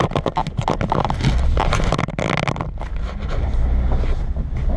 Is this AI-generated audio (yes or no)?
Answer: no